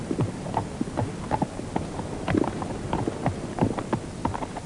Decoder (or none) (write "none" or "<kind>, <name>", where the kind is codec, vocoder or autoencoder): none